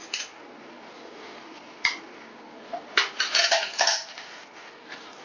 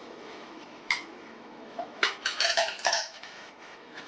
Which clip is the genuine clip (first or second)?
first